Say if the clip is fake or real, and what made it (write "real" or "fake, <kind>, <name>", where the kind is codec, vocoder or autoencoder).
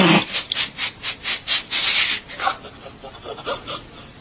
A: real